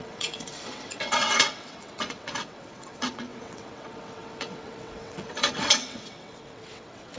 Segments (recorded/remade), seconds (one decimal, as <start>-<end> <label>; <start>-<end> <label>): 0.0-7.2 remade